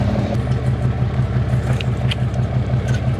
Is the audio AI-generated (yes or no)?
yes